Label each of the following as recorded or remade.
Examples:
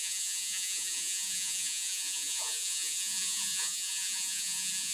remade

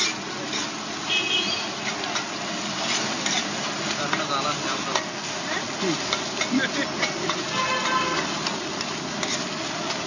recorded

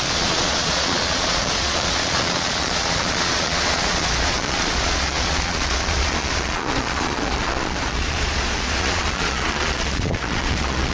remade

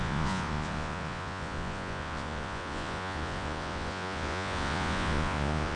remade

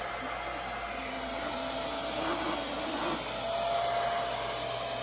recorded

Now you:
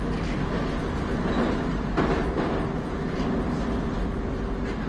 recorded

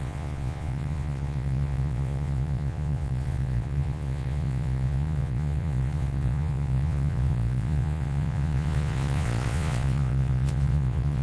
remade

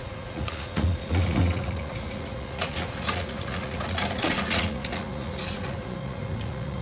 remade